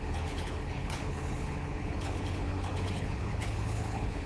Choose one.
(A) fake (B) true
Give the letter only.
A